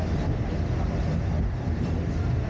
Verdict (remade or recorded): recorded